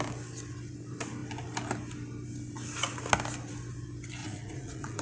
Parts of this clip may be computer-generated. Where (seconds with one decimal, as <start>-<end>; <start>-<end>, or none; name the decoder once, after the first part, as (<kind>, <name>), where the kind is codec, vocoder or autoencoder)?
4.2-5.0 (vocoder, Vocos)